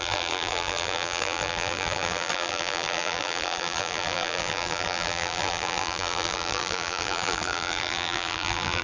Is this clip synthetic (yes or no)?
yes